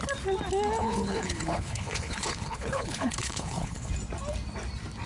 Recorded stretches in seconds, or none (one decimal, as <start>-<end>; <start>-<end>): 0.0-0.8; 3.9-5.1